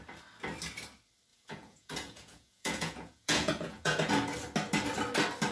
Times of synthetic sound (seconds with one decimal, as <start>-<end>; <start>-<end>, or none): 1.3-4.1